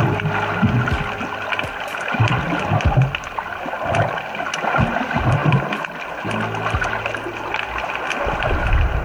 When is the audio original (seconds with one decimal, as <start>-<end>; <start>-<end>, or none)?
0.0-9.0